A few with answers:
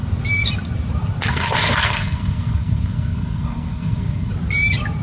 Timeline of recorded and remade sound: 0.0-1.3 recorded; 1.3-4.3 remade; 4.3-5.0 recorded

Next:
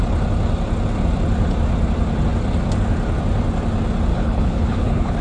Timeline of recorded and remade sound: 0.0-4.1 recorded; 4.1-5.2 remade

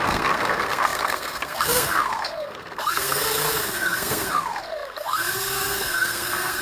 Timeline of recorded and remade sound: 0.0-6.6 remade

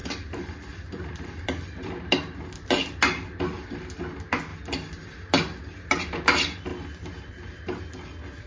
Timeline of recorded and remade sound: 0.0-1.9 remade; 1.9-8.5 recorded

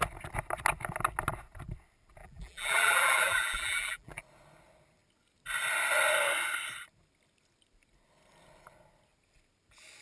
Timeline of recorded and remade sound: 0.0-2.2 recorded; 2.2-4.2 remade; 4.2-10.0 recorded

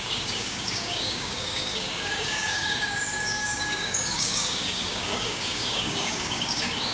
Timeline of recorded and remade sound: 0.0-6.9 remade

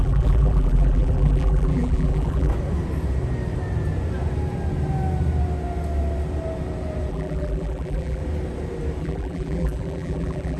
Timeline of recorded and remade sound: 0.0-2.5 remade; 2.5-7.1 recorded; 7.1-8.2 remade; 8.2-9.0 recorded; 9.0-10.6 remade

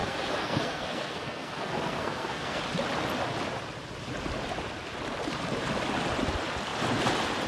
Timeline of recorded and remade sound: 0.0-2.6 remade; 2.6-7.5 recorded